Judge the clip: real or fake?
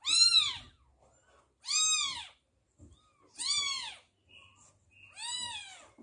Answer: real